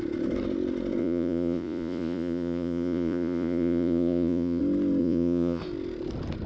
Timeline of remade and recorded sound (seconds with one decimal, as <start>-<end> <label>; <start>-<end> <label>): 0.0-1.0 recorded; 1.0-4.6 remade; 4.6-5.0 recorded; 5.0-5.6 remade; 5.6-6.5 recorded